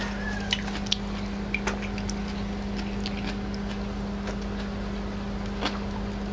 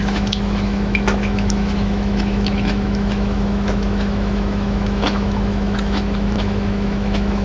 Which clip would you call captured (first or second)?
first